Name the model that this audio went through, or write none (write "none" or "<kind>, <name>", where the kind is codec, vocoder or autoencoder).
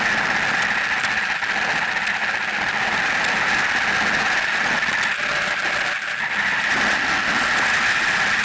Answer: none